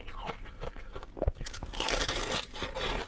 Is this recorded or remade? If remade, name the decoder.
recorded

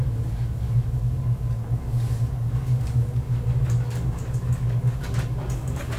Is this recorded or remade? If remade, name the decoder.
remade, codec, DAC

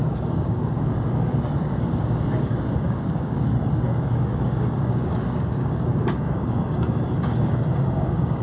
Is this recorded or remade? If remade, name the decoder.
remade, codec, DAC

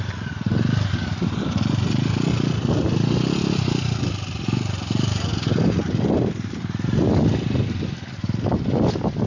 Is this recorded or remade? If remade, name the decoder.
recorded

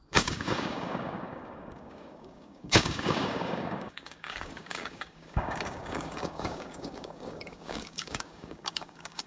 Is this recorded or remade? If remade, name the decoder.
remade, codec, DAC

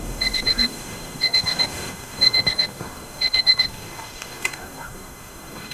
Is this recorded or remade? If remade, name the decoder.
remade, codec, DAC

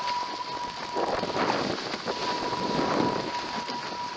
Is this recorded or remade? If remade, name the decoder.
recorded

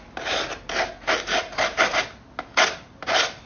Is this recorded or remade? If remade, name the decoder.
recorded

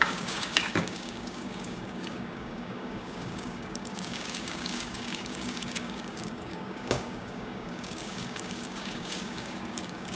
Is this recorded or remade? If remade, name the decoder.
remade, codec, DAC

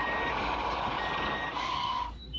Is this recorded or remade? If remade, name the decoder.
remade, codec, DAC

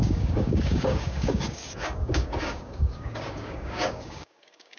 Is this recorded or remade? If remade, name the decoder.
remade, codec, DAC